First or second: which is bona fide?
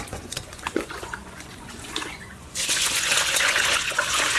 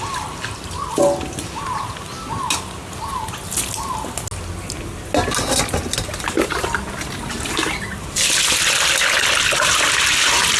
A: second